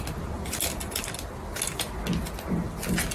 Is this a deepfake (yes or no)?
no